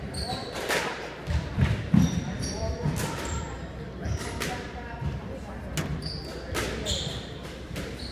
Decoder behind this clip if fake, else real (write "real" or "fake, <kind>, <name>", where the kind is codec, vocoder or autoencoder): real